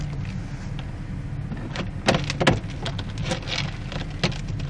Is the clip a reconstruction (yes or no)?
no